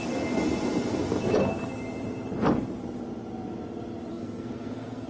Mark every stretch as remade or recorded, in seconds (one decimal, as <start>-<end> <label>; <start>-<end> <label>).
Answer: 0.0-4.1 recorded; 4.1-5.1 remade